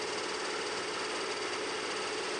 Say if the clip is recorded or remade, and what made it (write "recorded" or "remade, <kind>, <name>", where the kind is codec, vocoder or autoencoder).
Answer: recorded